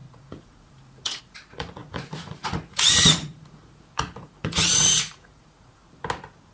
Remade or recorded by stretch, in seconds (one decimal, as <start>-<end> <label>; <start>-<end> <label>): 0.0-5.8 remade; 5.8-6.5 recorded